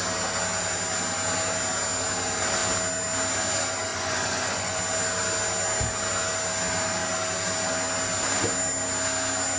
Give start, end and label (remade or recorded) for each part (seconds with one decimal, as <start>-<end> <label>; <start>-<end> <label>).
0.0-3.9 recorded; 3.9-4.8 remade; 4.8-9.6 recorded